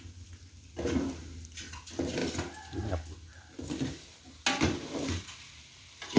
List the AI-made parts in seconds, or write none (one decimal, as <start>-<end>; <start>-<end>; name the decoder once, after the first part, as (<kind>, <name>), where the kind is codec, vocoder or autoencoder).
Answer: none